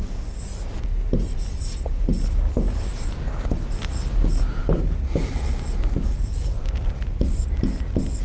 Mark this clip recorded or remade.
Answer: recorded